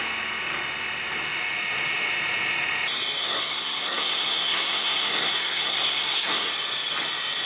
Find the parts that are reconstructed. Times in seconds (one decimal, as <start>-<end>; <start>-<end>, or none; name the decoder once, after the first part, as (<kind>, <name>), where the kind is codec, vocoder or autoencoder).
3.2-6.5 (codec, SNAC)